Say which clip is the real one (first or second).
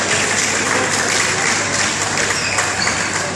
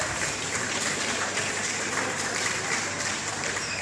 first